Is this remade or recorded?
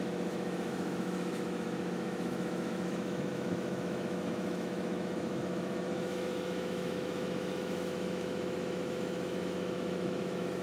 remade